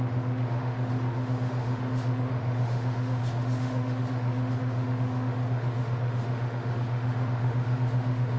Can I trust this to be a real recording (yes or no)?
no